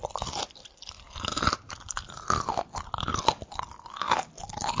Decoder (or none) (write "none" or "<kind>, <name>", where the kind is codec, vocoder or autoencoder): none